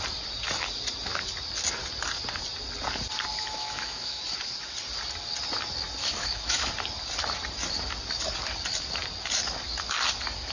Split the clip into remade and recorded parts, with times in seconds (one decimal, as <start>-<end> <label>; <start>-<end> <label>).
0.0-3.3 recorded; 3.3-4.2 remade; 4.2-6.0 recorded; 6.0-6.7 remade; 6.7-10.5 recorded